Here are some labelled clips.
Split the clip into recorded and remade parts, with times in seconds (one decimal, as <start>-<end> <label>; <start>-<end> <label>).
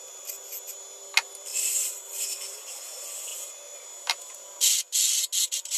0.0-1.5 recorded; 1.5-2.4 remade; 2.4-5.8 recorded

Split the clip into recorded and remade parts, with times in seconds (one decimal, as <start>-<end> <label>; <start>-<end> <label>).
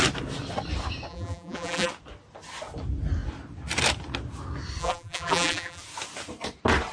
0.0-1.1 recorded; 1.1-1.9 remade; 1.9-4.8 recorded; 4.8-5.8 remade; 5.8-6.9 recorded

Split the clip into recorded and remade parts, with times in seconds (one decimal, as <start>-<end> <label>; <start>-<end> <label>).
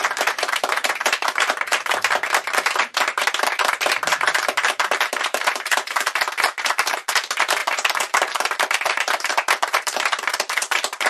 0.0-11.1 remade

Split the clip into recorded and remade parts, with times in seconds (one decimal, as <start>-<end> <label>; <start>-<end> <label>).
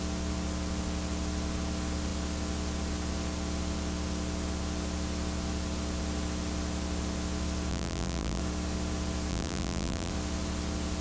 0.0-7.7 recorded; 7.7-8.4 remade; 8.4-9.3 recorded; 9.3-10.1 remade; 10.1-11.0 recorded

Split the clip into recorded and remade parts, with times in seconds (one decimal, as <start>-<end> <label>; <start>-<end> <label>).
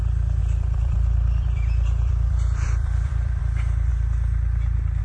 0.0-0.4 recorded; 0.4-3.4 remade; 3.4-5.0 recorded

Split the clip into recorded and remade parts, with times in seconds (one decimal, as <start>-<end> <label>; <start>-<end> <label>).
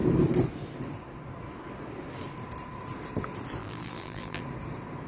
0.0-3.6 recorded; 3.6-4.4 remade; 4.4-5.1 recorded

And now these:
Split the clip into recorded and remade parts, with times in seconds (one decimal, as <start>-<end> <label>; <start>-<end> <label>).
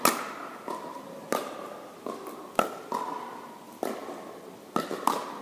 0.0-5.4 recorded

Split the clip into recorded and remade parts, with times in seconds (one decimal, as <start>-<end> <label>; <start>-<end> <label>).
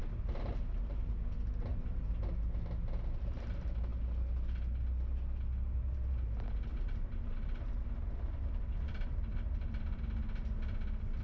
0.0-1.2 remade; 1.2-1.7 recorded; 1.7-2.3 remade; 2.3-6.7 recorded; 6.7-10.0 remade; 10.0-11.2 recorded